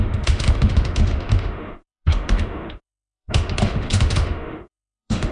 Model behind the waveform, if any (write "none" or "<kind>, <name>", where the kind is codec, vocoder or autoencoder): autoencoder, DAC-VAE